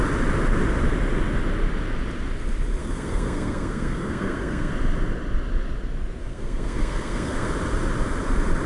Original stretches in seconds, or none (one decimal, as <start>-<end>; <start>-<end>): 0.0-2.8; 4.7-6.2; 7.5-8.7